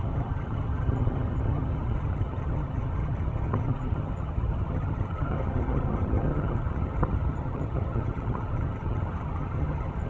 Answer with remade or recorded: remade